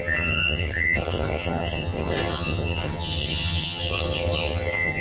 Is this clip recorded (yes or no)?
no